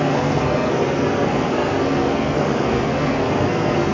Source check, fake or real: fake